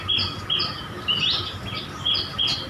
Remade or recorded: recorded